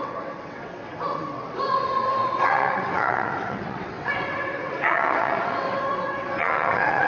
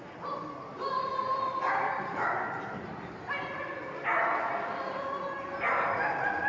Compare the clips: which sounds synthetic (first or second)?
first